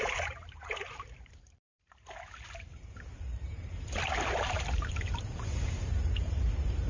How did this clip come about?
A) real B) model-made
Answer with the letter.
B